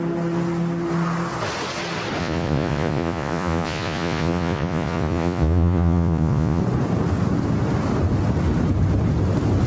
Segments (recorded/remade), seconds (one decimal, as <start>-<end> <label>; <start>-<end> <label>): 0.0-2.2 recorded; 2.2-6.6 remade; 6.6-9.7 recorded